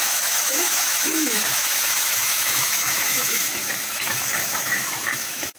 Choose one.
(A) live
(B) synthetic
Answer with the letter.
B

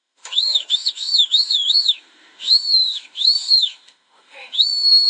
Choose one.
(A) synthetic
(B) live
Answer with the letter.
A